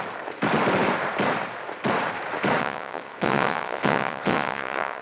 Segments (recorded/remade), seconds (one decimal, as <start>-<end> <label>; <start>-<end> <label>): 0.0-2.6 recorded; 2.6-5.0 remade

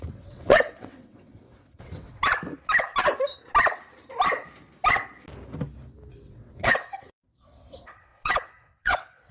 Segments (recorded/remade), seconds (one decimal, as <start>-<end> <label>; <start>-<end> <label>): 0.0-2.2 remade; 2.2-6.1 recorded; 6.1-9.3 remade